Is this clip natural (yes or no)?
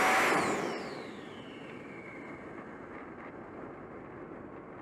yes